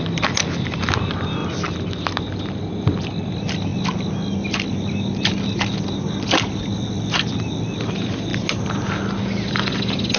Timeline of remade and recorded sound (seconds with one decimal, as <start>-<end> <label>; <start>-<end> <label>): 0.0-10.2 recorded